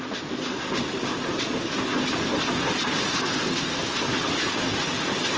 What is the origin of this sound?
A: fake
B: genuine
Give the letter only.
B